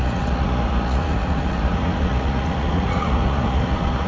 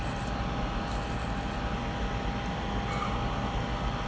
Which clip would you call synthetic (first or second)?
first